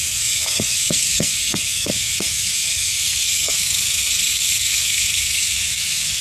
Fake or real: fake